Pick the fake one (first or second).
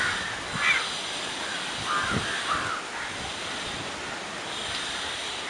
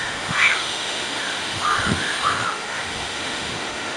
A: second